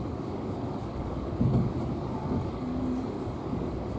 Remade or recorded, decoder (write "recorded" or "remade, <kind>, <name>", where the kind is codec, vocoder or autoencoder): remade, codec, DAC